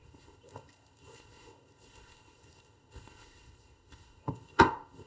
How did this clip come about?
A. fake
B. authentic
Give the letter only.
A